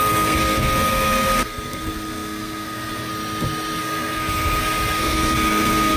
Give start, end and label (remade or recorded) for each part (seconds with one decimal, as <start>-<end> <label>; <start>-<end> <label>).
0.0-3.1 remade; 3.1-3.8 recorded; 3.8-6.0 remade